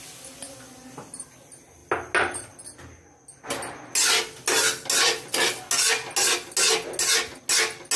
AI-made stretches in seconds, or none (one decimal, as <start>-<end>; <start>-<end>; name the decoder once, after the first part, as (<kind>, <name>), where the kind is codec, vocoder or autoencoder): none